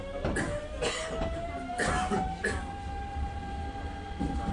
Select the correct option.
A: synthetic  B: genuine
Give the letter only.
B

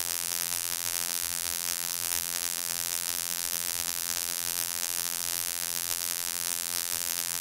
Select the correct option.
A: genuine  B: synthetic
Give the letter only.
B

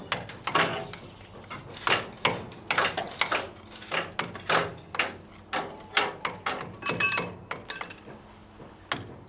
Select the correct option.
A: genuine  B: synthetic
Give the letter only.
A